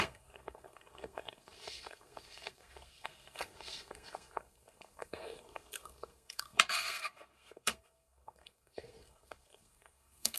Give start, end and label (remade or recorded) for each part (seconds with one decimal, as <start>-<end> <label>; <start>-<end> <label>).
0.0-10.4 remade